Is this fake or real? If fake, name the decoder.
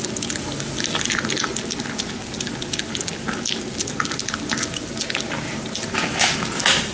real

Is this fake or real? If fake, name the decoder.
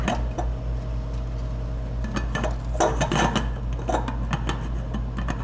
real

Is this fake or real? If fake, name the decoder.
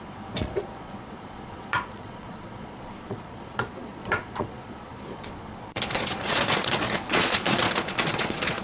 fake, vocoder, Vocos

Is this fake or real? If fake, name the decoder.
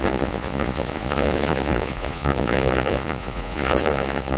fake, vocoder, Vocos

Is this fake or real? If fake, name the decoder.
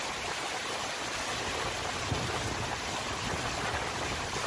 real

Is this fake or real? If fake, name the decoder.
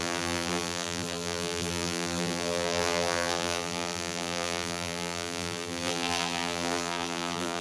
fake, vocoder, BigVGAN v2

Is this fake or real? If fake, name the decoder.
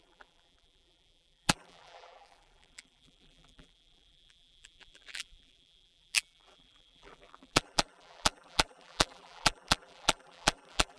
fake, vocoder, BigVGAN v2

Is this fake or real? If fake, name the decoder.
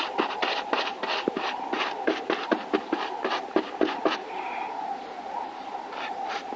fake, vocoder, BigVGAN v2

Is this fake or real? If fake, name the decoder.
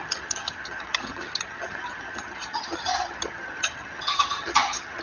fake, vocoder, HiFi-GAN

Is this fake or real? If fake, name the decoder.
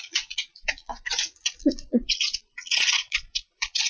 fake, vocoder, Vocos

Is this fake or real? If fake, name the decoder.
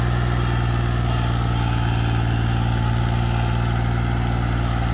real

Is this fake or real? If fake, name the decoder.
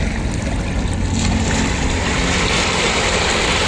real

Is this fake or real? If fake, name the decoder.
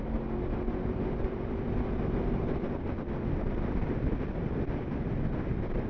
real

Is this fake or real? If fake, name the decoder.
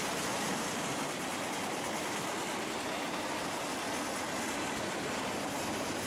real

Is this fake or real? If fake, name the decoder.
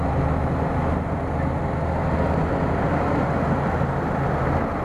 real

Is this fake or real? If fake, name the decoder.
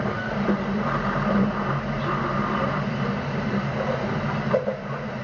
real